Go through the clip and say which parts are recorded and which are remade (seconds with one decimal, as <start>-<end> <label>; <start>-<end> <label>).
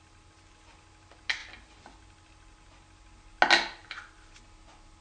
0.0-5.0 recorded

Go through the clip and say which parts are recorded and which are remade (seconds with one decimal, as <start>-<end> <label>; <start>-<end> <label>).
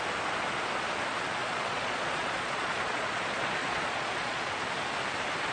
0.0-1.4 recorded; 1.4-4.5 remade; 4.5-5.5 recorded